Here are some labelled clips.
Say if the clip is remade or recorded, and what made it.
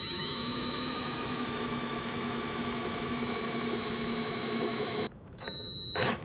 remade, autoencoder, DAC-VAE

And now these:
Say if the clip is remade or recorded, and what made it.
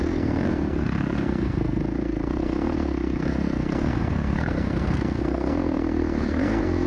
remade, codec, SNAC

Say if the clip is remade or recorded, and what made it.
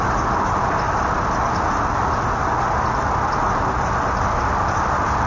recorded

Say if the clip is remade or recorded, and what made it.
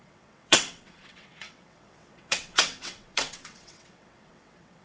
remade, vocoder, WaveNeXt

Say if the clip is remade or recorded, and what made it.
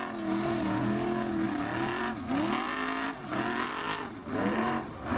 recorded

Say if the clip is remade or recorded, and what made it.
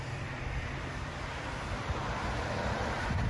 remade, vocoder, BigVGAN v2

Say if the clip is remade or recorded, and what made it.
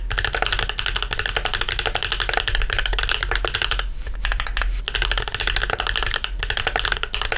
recorded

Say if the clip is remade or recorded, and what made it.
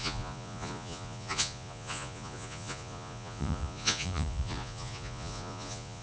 remade, vocoder, Vocos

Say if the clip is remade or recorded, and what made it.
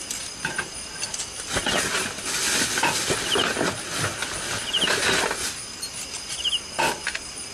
recorded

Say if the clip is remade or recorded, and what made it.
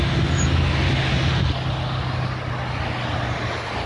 recorded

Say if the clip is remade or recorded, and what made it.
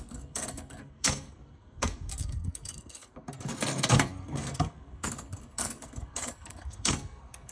remade, codec, SNAC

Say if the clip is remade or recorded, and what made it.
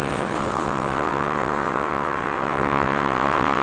remade, vocoder, WaveNeXt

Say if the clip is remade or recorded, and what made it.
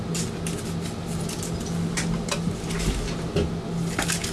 recorded